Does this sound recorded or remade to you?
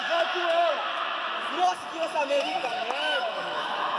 remade